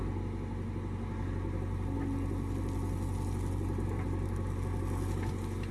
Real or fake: real